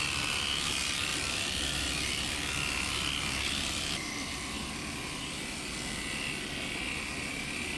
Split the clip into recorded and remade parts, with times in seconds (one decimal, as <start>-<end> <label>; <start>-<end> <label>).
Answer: 0.0-7.8 recorded